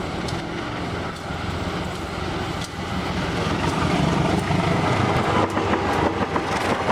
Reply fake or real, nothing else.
real